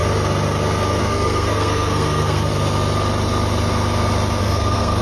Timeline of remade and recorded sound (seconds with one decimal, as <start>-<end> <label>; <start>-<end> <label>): 0.0-1.0 recorded; 1.0-2.5 remade; 2.5-4.4 recorded; 4.4-5.0 remade